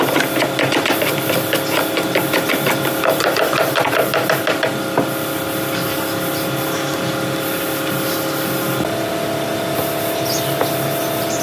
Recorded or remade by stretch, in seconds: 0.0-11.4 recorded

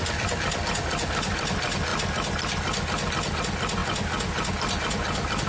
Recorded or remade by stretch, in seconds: 0.0-5.5 recorded